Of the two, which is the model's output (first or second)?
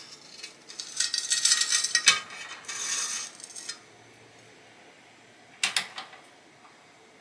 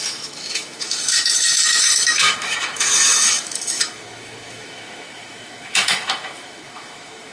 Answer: second